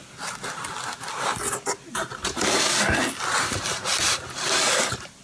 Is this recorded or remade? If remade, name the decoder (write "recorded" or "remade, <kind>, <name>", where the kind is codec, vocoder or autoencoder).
recorded